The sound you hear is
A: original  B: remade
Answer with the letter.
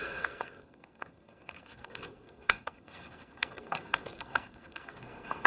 B